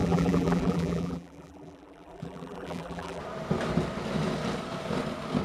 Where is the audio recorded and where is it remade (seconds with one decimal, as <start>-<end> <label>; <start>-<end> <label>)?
0.0-3.2 remade; 3.2-5.4 recorded